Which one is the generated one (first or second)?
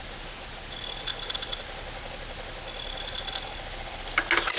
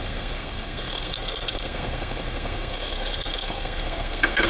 second